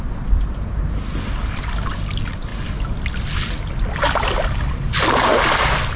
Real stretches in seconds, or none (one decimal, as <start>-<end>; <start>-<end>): 0.0-6.0